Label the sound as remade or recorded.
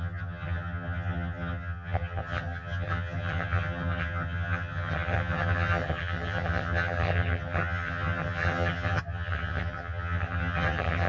remade